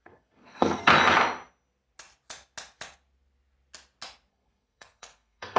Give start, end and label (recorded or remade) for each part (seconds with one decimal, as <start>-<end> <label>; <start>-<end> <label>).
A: 0.0-0.9 remade; 0.9-4.3 recorded; 4.3-5.6 remade